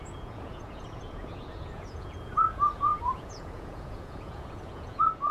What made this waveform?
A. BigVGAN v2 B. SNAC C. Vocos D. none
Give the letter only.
C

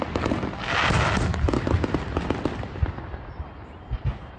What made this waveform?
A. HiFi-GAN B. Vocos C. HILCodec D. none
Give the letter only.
D